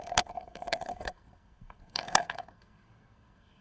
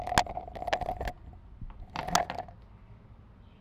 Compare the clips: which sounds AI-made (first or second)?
first